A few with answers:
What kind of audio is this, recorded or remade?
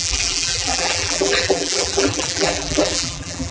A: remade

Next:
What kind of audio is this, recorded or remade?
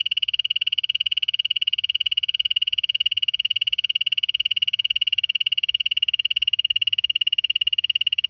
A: recorded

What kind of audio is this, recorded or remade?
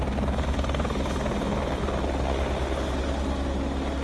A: recorded